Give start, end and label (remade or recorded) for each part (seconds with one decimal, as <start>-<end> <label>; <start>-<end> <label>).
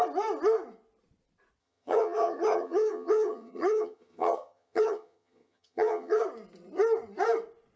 0.0-1.6 recorded; 1.6-6.2 remade; 6.2-7.8 recorded